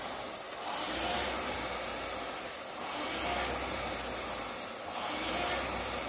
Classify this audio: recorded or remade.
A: recorded